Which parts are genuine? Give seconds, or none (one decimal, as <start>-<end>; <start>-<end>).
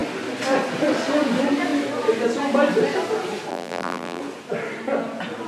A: 0.0-3.5; 4.2-5.5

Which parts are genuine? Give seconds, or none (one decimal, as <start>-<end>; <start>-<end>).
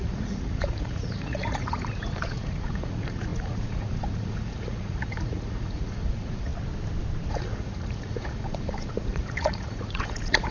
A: 6.5-7.3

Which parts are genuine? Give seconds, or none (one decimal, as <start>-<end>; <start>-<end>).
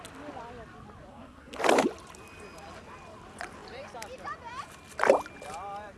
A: 0.0-1.1; 1.6-6.0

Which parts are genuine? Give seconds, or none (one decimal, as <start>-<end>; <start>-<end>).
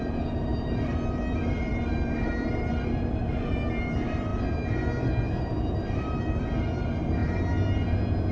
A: 4.3-5.4; 7.2-8.3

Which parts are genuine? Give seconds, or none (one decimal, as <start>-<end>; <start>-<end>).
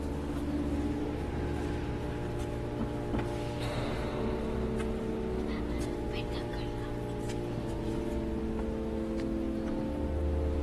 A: 0.0-10.6